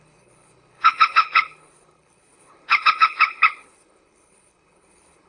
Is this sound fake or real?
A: fake